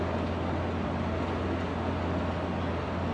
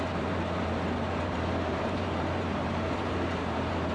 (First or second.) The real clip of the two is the first